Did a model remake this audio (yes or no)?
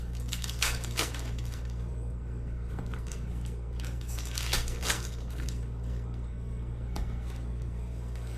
yes